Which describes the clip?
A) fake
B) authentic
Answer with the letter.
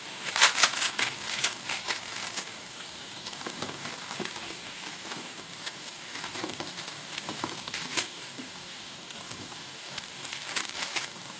A